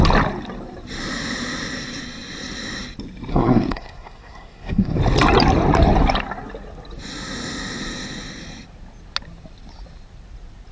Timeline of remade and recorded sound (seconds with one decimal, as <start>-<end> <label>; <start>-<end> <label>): 0.0-3.3 recorded; 3.3-5.0 remade; 5.0-10.7 recorded